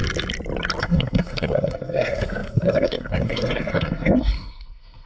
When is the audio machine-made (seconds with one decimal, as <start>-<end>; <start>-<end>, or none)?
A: 0.8-5.1